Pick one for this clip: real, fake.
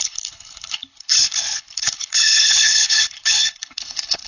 fake